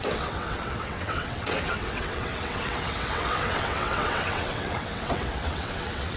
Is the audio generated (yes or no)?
yes